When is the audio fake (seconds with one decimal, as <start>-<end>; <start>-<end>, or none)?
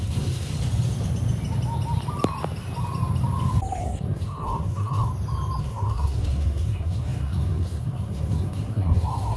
0.0-0.5; 3.8-5.1; 5.6-9.4